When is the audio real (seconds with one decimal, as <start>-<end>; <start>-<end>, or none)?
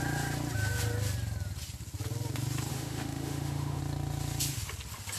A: 0.0-2.7; 3.8-5.2